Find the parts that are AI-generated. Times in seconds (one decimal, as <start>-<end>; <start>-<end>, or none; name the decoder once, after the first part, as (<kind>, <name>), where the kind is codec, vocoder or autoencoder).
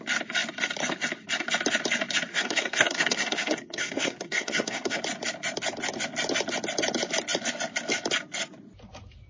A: 2.3-5.0 (codec, SNAC)